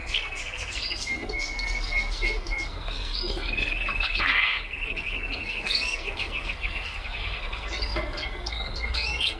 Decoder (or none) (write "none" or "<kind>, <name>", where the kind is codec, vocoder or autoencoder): codec, SNAC